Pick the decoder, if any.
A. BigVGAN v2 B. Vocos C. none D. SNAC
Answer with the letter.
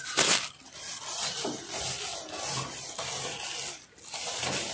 C